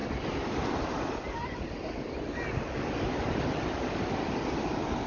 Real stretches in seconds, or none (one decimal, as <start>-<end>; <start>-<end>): 0.0-5.1